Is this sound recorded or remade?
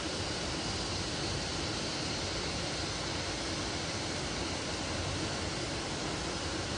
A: recorded